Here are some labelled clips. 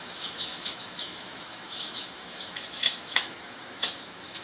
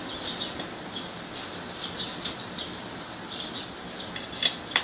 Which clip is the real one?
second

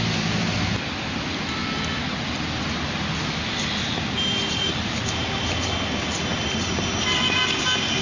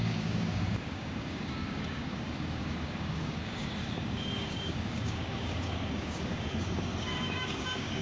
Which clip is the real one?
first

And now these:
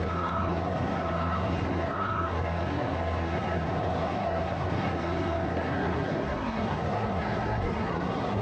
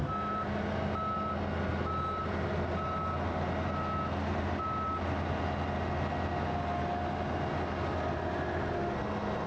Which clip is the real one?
second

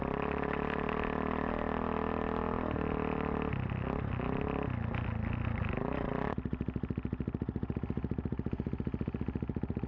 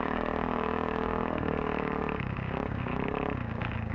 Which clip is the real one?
first